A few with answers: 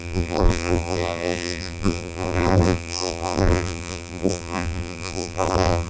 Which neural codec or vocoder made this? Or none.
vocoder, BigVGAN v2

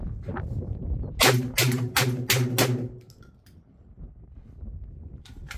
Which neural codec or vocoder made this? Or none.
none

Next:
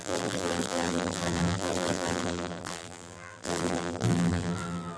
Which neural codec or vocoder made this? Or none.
vocoder, BigVGAN v2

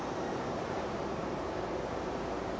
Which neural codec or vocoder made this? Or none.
vocoder, BigVGAN v2